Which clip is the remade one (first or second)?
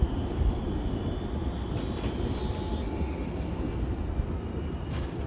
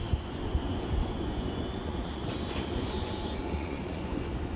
second